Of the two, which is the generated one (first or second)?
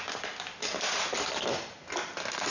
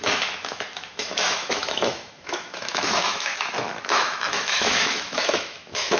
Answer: second